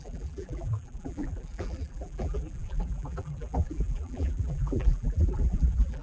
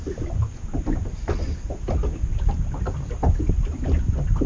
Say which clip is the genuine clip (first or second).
second